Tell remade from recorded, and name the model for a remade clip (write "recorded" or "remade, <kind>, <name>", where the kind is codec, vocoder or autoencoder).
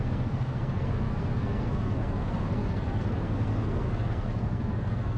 remade, codec, SNAC